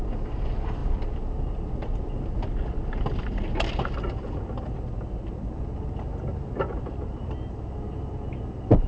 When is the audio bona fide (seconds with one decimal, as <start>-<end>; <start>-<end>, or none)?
0.0-8.9